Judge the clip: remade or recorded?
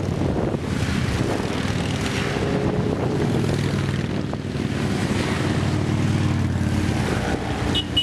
recorded